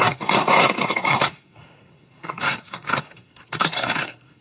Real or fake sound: fake